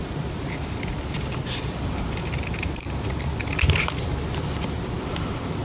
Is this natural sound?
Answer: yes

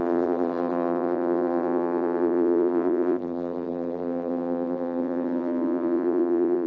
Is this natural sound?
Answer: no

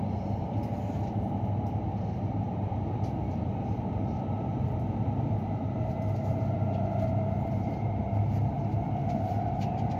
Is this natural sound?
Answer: no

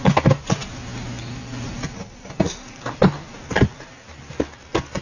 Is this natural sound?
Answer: yes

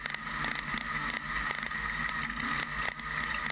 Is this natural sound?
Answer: yes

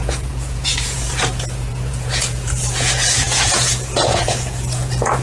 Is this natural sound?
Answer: no